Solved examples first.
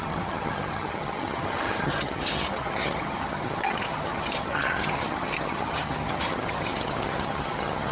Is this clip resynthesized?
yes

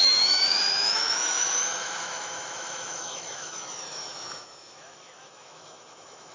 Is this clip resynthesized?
yes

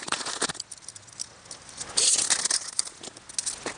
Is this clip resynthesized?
no